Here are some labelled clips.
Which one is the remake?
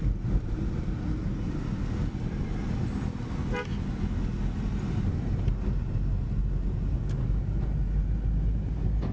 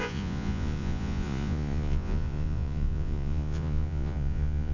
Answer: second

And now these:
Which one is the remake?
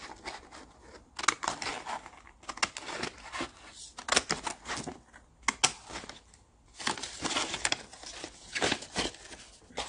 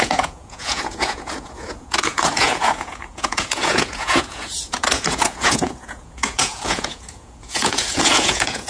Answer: second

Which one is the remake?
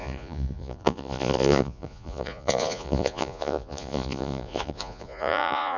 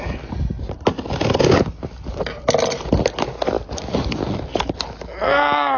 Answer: first